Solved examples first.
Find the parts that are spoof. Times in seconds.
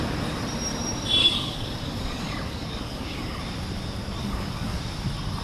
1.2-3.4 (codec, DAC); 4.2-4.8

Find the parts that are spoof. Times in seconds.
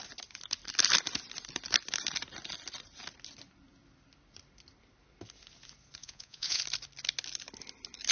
6.0-6.6 (vocoder, Vocos)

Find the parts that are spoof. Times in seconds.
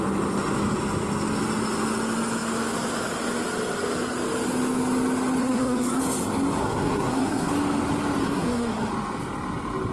5.4-6.0 (codec, SNAC); 6.6-7.5; 8.2-8.9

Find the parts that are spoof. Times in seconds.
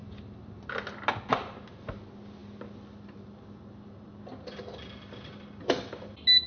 none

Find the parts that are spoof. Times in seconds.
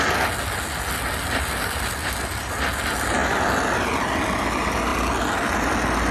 none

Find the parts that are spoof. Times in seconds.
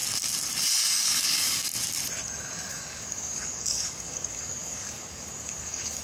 0.9-1.7 (codec, DAC); 2.7-6.0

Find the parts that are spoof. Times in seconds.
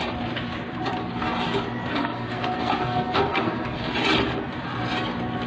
1.9-3.9 (codec, SNAC)